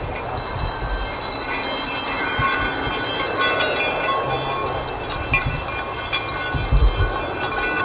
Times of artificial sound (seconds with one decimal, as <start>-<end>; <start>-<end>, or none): none